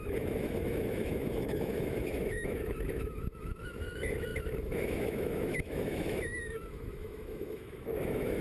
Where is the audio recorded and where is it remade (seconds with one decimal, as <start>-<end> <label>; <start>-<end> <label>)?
0.0-8.4 remade